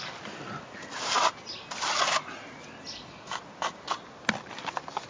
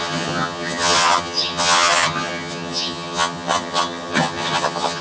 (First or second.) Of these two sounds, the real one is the first